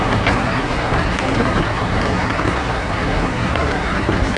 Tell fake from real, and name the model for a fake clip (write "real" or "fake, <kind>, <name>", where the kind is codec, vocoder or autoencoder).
fake, codec, SNAC